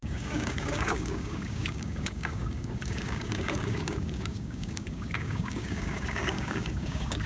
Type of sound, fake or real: fake